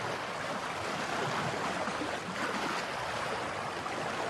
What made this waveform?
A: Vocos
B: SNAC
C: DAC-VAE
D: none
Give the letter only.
D